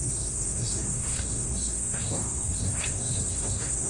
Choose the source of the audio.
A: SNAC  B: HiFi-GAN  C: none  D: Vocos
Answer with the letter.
A